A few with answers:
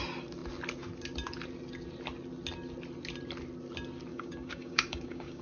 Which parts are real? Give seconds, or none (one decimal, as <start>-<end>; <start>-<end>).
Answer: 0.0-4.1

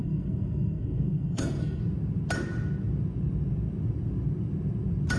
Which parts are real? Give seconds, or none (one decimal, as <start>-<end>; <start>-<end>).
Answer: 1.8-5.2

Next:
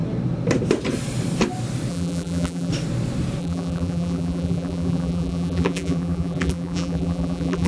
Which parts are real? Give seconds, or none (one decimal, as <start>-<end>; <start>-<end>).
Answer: 0.0-1.9; 2.7-3.4